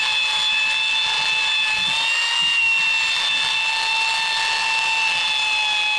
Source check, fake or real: real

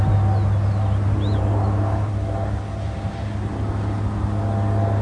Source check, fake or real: real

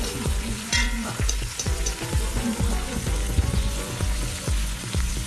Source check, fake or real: fake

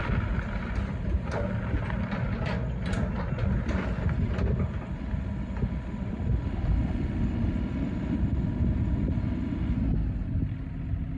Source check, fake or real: real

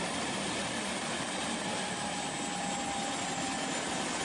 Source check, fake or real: real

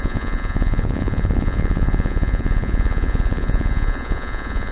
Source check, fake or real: fake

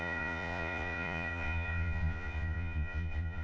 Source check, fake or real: fake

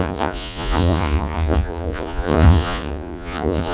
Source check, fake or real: fake